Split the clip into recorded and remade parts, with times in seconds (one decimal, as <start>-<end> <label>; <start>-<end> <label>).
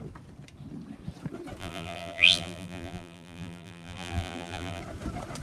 0.0-1.6 recorded; 1.6-4.8 remade; 4.8-5.4 recorded